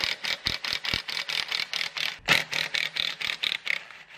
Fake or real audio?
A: real